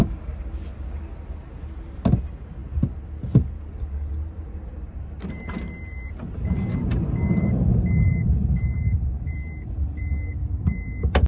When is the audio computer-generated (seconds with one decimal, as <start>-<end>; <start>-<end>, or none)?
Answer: 4.7-10.0